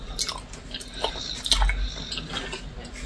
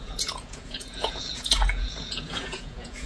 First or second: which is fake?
second